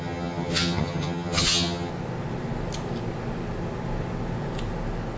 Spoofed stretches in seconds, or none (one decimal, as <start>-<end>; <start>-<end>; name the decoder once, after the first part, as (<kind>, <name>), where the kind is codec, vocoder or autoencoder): 0.0-1.9 (vocoder, HiFi-GAN)